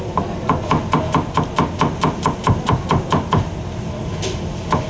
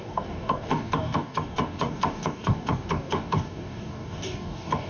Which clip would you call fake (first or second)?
second